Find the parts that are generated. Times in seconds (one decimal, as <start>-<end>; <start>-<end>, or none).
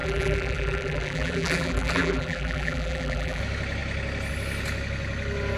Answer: 0.0-3.4